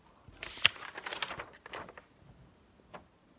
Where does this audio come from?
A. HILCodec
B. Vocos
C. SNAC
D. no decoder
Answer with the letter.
D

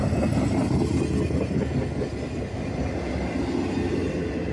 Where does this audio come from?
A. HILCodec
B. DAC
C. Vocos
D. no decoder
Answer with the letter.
D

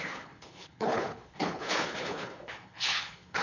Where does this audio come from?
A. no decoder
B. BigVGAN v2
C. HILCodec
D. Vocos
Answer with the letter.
C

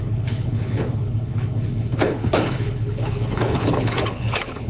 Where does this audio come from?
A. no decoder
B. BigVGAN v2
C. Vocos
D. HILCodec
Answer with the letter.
D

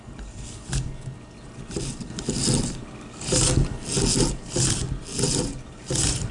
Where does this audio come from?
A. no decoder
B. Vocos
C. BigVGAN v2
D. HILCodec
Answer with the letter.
A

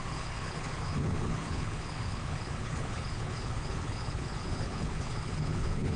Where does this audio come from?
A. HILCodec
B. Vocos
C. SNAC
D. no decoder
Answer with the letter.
A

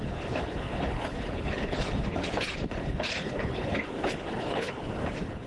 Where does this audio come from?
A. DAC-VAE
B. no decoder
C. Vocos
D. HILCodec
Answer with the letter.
D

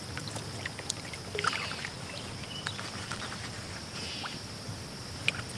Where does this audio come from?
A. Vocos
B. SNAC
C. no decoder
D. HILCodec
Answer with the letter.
C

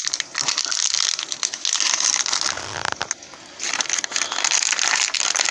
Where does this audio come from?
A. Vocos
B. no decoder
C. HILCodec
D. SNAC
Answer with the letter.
B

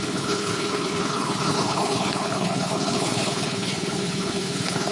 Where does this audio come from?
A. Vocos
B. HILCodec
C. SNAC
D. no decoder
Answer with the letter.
B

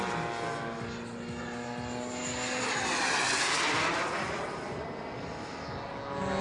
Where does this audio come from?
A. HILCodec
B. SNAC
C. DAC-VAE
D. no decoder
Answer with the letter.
D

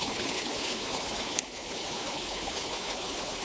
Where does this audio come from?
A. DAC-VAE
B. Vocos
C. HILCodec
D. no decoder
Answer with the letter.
C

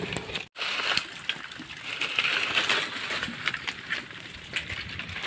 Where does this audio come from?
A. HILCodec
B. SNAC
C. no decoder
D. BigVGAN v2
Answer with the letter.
C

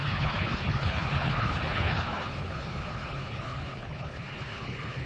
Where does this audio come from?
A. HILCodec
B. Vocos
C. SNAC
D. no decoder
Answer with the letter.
A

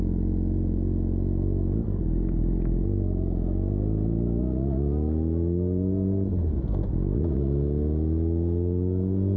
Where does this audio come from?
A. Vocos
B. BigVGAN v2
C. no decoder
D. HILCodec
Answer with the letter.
C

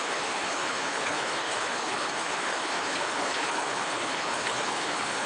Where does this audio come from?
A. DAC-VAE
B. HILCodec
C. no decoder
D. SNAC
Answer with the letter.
B